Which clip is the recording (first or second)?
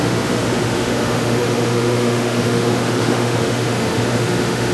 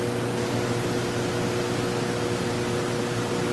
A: second